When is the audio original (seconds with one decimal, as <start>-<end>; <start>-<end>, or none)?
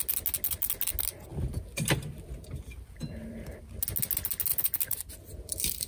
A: 0.0-1.3; 3.6-4.5; 5.1-5.9